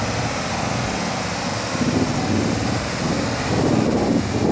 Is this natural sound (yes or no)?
yes